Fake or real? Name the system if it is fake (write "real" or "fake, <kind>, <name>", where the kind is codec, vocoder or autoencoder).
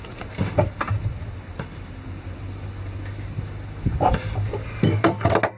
real